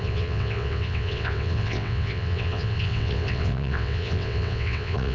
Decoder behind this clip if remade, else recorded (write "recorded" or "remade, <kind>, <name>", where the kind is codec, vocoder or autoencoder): remade, vocoder, WaveNeXt